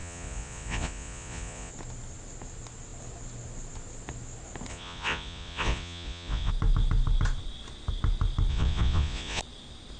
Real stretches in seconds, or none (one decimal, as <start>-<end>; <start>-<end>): 1.7-4.7; 6.5-8.5; 9.4-10.0